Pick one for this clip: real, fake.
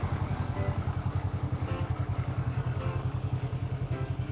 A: fake